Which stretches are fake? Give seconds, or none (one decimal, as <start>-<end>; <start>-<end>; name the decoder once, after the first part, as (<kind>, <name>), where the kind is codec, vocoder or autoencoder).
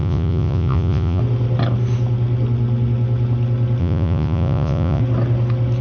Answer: 0.0-1.2 (vocoder, Vocos); 3.8-5.0